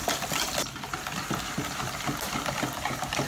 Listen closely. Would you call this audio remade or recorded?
recorded